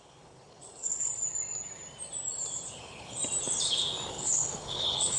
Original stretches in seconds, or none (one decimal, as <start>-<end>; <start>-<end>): 1.1-2.8; 3.2-4.1